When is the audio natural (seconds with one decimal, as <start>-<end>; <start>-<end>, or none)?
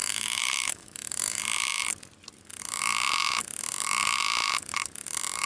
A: 1.4-5.5